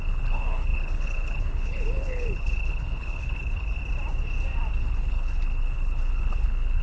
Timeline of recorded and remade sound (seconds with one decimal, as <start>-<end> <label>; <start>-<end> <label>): 0.0-3.8 remade; 3.8-4.8 recorded; 4.8-6.8 remade